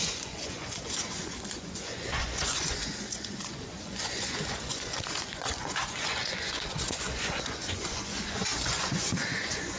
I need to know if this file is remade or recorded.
remade